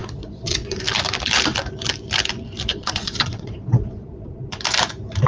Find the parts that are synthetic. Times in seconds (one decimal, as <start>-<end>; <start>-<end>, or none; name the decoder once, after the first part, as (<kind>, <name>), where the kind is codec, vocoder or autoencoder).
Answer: 0.0-0.8 (vocoder, Vocos); 2.7-4.6